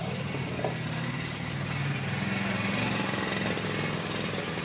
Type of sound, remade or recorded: recorded